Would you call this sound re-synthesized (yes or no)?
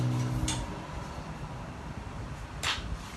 no